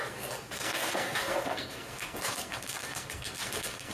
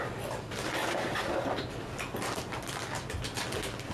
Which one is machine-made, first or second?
first